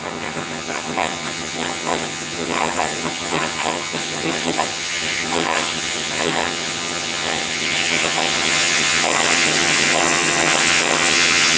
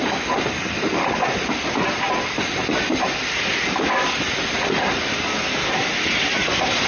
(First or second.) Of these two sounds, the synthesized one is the first